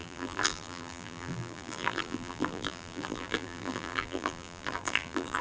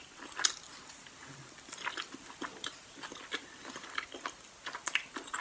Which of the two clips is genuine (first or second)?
second